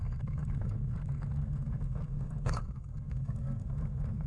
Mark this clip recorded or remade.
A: remade